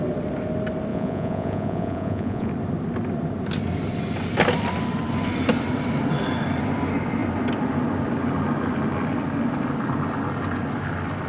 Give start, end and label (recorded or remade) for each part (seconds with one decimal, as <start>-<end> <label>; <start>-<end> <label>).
0.0-0.9 recorded; 0.9-2.5 remade; 2.5-11.3 recorded